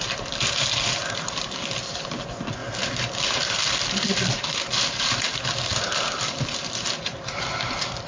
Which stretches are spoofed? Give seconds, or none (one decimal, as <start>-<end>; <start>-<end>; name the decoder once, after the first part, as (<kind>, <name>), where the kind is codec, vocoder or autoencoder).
none